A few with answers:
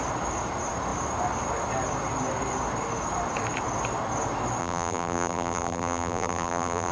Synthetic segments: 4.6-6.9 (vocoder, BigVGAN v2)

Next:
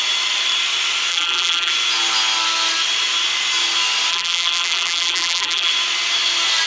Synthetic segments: 1.1-1.7 (vocoder, BigVGAN v2); 4.1-5.7

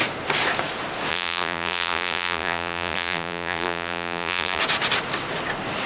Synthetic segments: 1.1-4.6 (vocoder, BigVGAN v2)

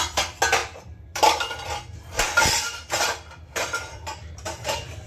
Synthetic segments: 0.6-1.2 (vocoder, BigVGAN v2); 1.9-5.1

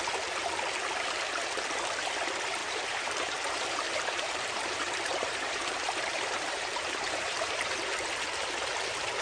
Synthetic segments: 2.6-7.7 (vocoder, BigVGAN v2)

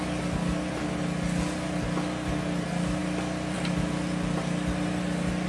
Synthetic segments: 3.0-3.7 (vocoder, BigVGAN v2)

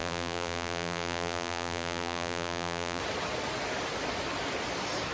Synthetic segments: 0.0-3.0 (vocoder, BigVGAN v2)

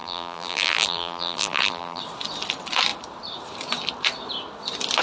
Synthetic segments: 0.0-2.0 (vocoder, BigVGAN v2)